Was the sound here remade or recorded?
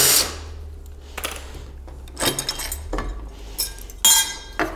recorded